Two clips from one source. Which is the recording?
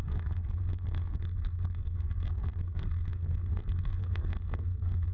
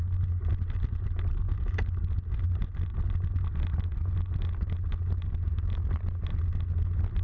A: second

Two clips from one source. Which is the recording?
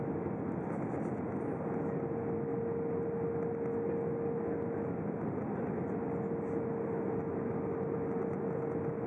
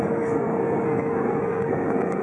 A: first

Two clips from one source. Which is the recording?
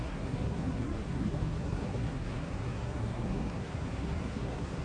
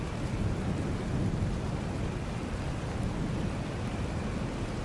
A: second